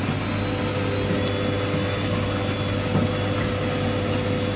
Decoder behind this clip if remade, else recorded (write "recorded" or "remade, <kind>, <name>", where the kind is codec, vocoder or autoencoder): recorded